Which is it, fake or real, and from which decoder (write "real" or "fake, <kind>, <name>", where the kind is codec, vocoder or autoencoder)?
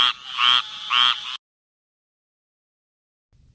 real